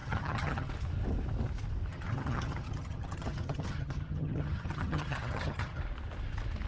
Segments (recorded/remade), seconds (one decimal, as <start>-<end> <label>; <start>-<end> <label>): 0.0-0.7 remade; 0.7-1.9 recorded; 1.9-5.8 remade; 5.8-6.7 recorded